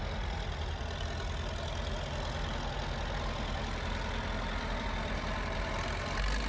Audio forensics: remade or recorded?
recorded